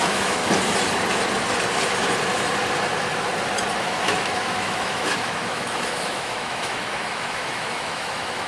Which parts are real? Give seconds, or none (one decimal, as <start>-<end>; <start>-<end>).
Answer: 0.4-3.8